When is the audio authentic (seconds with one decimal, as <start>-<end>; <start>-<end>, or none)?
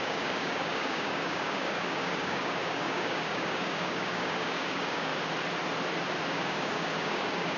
5.1-6.3